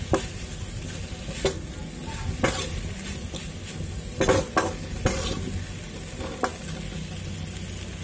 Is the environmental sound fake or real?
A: real